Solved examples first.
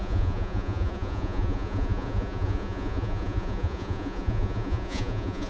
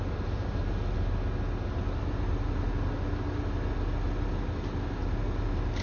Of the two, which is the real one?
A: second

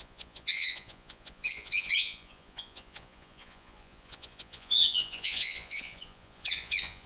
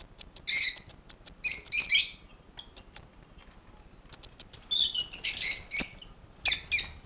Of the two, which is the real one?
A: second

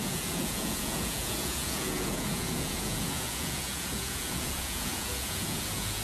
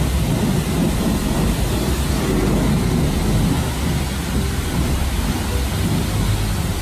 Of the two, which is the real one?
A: second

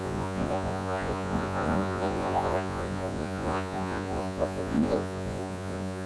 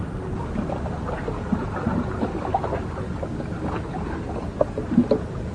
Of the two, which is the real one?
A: second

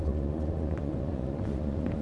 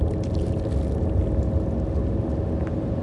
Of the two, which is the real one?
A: second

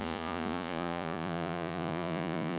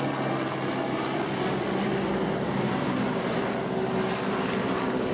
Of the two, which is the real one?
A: second